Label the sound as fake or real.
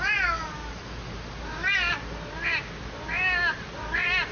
real